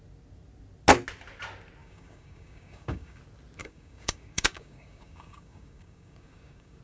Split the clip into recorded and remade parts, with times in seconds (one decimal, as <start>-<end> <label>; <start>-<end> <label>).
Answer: 0.0-1.8 recorded; 1.8-3.2 remade; 3.2-3.6 recorded; 3.6-6.8 remade